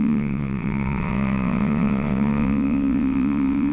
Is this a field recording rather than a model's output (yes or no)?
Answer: no